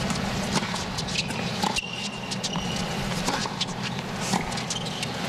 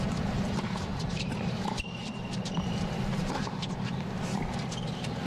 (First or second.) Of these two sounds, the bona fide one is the first